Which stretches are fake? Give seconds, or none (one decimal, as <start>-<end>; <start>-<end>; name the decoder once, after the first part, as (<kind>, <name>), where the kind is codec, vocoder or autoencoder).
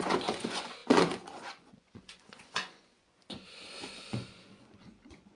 0.0-5.3 (vocoder, Vocos)